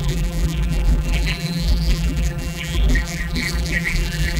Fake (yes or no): yes